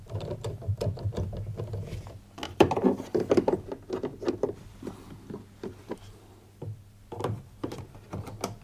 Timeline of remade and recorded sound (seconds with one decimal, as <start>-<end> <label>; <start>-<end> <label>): 0.0-8.6 recorded